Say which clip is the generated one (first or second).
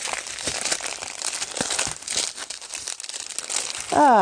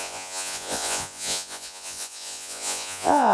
second